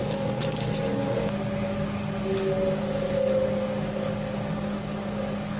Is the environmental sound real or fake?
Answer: fake